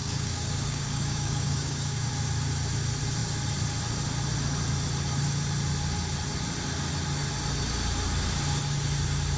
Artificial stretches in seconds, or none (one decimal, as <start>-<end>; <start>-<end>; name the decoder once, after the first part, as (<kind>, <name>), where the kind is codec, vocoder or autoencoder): 0.0-2.1 (codec, DAC)